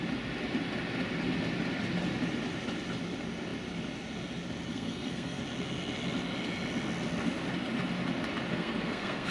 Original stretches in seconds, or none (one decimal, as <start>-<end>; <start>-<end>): 0.0-4.7; 5.4-8.5

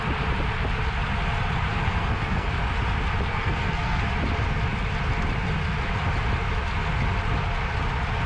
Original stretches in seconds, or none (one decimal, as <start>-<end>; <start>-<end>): 0.0-1.7; 2.5-3.3; 4.0-8.3